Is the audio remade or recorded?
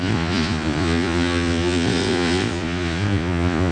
remade